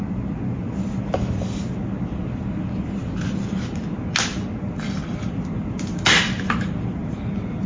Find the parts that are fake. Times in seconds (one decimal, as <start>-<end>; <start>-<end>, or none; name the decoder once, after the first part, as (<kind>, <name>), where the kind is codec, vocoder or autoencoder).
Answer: none